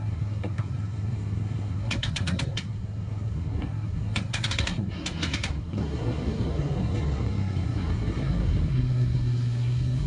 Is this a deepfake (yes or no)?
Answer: yes